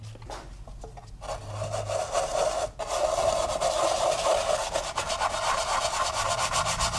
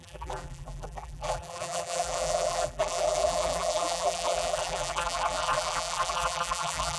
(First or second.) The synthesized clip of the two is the second